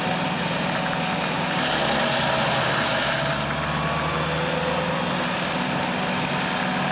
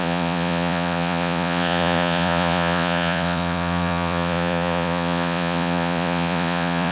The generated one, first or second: second